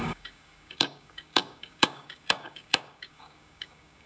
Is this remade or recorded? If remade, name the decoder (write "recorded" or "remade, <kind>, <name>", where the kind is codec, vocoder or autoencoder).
remade, codec, DAC